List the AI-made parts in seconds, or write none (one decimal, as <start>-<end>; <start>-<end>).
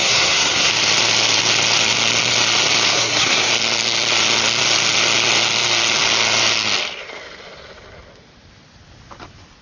0.0-0.7; 2.9-3.5